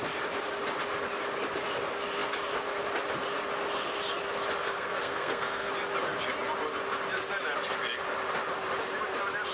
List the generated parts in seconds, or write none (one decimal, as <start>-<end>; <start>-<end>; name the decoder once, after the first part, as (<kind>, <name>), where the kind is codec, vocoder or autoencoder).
4.6-5.7 (codec, SNAC)